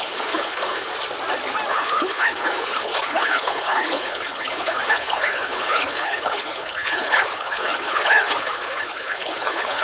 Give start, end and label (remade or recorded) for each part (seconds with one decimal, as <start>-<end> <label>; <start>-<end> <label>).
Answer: 0.0-0.9 remade; 0.9-1.7 recorded; 1.7-9.8 remade